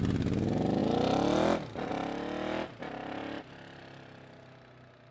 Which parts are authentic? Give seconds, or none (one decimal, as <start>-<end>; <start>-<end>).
0.0-5.1